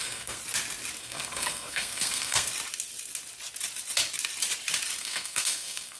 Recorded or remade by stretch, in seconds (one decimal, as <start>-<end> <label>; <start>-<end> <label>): 0.0-0.4 remade; 0.4-1.0 recorded; 1.0-2.5 remade; 2.5-5.0 recorded; 5.0-6.0 remade